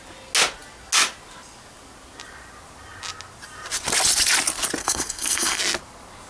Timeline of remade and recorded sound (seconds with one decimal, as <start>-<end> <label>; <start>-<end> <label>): 0.0-4.8 recorded; 4.8-5.6 remade; 5.6-6.3 recorded